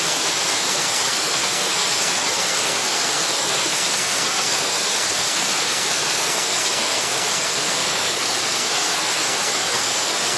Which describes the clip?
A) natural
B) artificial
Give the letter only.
B